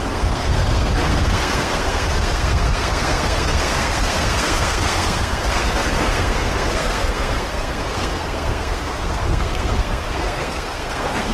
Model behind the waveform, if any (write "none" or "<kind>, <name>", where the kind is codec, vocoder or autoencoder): codec, SNAC